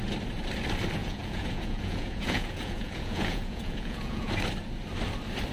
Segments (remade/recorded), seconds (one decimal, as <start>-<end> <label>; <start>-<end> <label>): 0.0-1.0 recorded; 1.0-4.3 remade; 4.3-5.5 recorded